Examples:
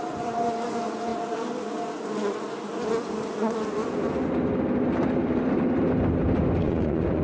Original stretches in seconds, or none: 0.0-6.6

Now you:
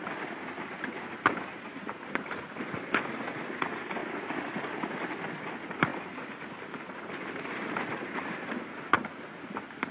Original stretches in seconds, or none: 0.0-9.9

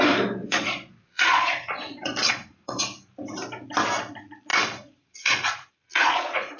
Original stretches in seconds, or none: 0.0-0.4; 2.8-4.5